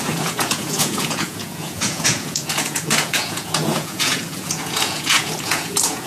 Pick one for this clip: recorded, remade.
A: remade